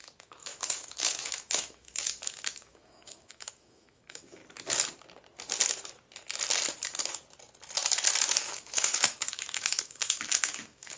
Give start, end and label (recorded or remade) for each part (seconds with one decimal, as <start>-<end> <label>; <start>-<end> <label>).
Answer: 0.0-4.4 remade; 4.4-8.2 recorded; 8.2-11.0 remade